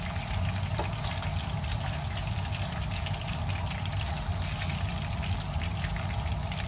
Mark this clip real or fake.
real